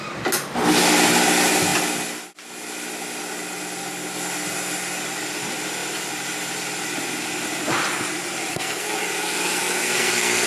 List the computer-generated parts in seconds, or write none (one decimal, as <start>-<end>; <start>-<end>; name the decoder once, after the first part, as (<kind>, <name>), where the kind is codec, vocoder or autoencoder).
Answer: 8.5-10.5 (codec, SNAC)